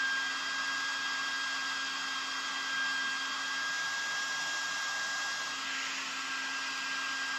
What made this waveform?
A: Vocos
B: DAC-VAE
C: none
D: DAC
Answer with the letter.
C